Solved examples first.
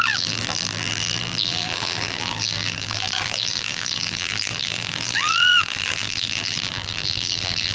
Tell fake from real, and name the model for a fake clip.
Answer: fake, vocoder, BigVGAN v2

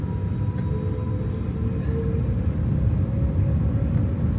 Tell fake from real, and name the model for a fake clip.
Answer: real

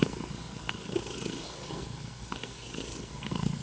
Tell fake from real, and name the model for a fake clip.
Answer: fake, codec, SNAC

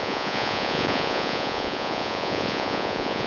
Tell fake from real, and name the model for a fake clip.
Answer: fake, vocoder, Vocos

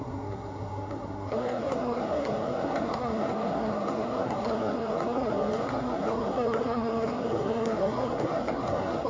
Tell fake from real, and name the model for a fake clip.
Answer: fake, codec, SNAC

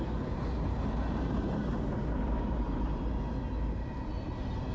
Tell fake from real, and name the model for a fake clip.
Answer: real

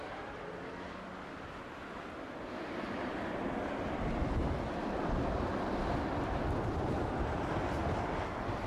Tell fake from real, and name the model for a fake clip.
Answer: real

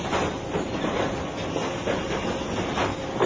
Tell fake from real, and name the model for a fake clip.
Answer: real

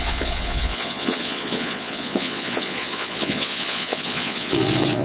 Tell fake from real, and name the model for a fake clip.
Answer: fake, vocoder, Vocos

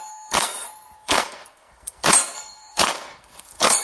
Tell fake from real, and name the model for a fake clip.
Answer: fake, codec, SNAC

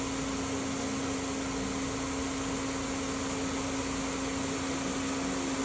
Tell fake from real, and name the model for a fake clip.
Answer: real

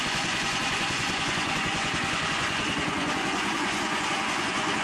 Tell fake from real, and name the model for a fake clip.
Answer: fake, vocoder, Vocos